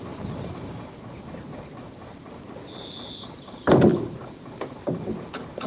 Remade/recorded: remade